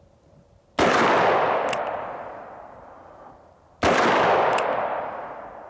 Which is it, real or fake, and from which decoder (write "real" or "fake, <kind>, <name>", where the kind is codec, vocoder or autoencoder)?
real